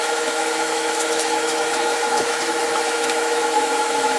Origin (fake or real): fake